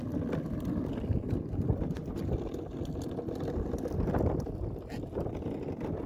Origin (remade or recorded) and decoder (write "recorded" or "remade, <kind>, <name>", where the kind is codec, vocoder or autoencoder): recorded